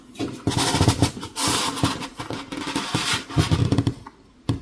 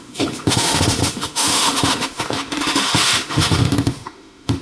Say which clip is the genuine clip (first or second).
first